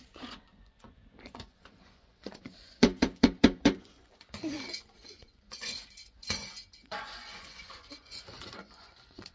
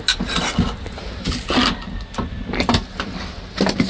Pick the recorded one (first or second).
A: second